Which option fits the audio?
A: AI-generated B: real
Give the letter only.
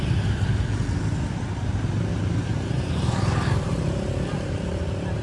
A